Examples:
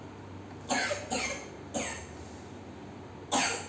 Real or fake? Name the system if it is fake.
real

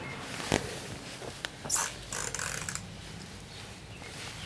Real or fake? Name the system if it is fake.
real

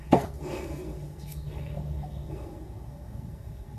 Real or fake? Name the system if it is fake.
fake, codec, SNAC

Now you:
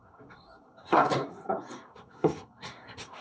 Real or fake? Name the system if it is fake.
fake, codec, SNAC